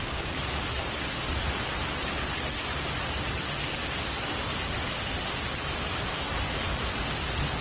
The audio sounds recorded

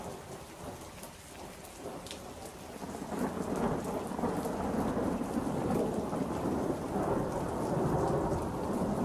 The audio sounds recorded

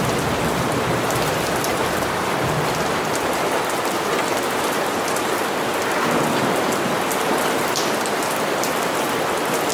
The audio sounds recorded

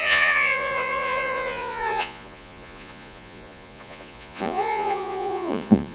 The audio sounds remade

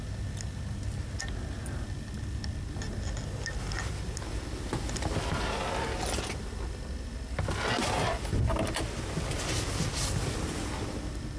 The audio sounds recorded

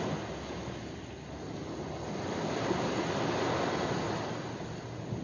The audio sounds recorded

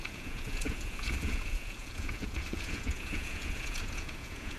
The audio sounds remade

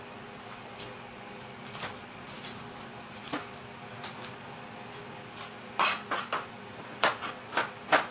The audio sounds recorded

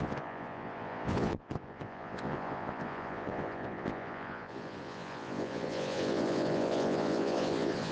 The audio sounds remade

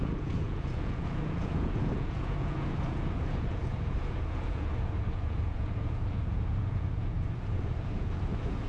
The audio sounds remade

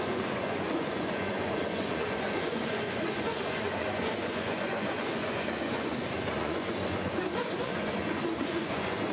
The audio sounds remade